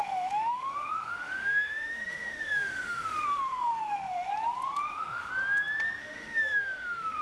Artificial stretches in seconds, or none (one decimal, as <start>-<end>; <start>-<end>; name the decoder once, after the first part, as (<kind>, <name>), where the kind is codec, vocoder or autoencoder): 0.0-4.3 (autoencoder, DAC-VAE); 4.8-5.3; 6.0-7.2